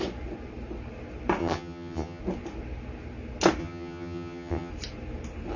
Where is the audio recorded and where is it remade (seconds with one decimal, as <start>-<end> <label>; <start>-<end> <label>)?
0.0-1.4 recorded; 1.4-2.2 remade; 2.2-3.6 recorded; 3.6-4.7 remade; 4.7-5.6 recorded

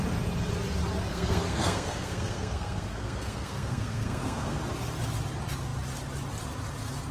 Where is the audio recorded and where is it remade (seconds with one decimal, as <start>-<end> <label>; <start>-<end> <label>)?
0.0-1.1 recorded; 1.1-4.6 remade; 4.6-7.1 recorded

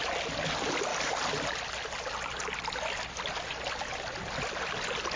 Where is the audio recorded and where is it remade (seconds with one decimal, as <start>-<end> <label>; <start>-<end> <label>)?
0.0-5.2 recorded

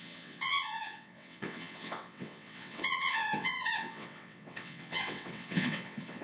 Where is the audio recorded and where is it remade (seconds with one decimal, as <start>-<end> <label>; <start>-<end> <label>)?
0.0-6.2 remade

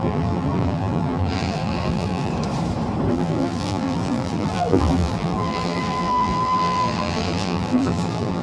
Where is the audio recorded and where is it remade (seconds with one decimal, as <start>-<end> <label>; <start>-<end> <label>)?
0.0-2.3 remade; 2.3-3.1 recorded; 3.1-8.4 remade